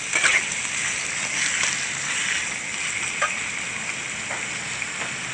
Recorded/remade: recorded